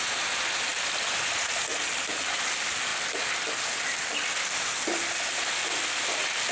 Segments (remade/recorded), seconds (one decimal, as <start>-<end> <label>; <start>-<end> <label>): 0.0-0.7 recorded; 0.7-1.7 remade; 1.7-6.5 recorded